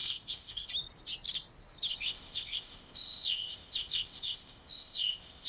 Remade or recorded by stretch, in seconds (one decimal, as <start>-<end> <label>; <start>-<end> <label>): 0.0-0.7 remade; 0.7-1.9 recorded; 1.9-5.5 remade